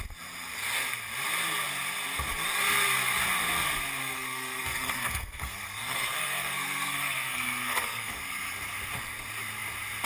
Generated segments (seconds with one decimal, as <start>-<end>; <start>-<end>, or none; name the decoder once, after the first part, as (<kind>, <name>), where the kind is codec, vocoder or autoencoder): 4.0-8.1 (codec, SNAC)